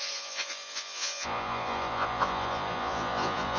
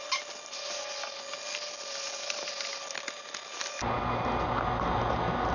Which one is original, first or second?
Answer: second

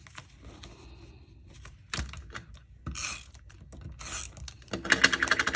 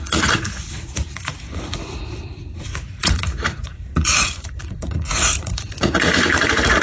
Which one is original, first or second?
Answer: first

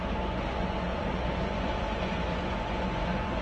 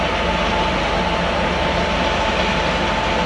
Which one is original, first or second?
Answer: second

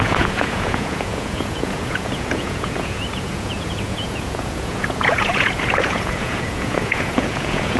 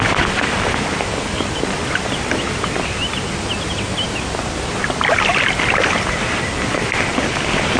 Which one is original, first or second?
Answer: second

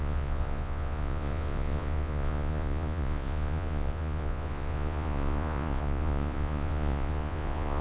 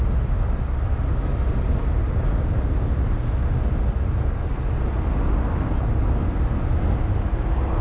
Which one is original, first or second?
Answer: second